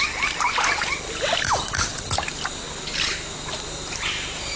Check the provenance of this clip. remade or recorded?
recorded